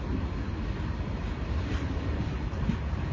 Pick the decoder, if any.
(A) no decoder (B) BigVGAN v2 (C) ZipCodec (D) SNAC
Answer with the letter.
A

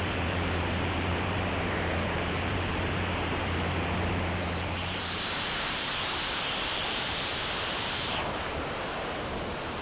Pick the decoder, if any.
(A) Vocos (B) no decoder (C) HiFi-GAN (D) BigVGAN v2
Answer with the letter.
D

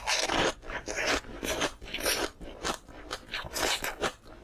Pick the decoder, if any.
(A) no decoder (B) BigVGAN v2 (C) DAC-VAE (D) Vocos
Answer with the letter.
B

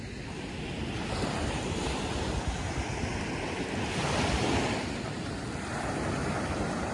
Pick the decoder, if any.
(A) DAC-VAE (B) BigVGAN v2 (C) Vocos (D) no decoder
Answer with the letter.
D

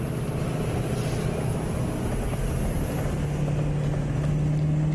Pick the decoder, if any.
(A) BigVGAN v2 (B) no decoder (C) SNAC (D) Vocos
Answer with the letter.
B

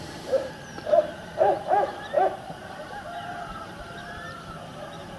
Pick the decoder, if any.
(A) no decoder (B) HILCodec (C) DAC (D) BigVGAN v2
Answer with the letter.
D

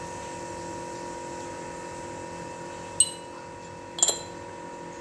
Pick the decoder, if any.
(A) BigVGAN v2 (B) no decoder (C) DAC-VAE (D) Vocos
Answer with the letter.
B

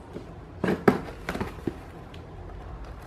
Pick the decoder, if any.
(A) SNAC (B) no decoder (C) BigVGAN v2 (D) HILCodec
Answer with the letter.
B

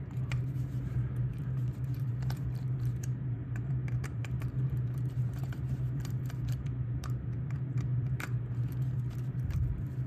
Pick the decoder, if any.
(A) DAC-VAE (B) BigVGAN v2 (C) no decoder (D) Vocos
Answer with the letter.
B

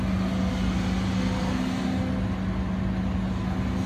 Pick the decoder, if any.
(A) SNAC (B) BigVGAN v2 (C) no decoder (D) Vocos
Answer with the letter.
C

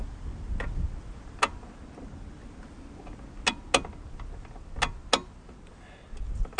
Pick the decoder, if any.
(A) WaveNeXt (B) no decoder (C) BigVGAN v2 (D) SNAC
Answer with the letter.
B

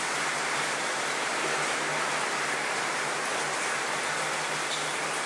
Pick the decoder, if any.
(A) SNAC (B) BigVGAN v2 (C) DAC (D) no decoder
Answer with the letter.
D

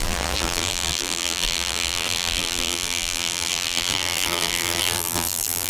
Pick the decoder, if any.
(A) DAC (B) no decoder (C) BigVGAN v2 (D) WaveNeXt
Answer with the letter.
C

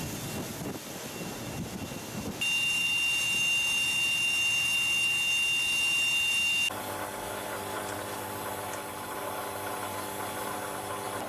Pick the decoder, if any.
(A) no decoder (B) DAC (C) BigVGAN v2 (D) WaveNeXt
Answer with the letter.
A